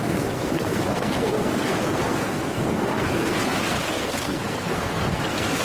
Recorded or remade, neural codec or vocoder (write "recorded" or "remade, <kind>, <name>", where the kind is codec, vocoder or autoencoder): remade, codec, SNAC